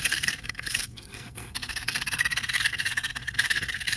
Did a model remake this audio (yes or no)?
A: yes